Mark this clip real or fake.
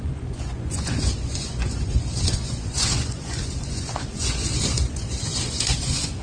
fake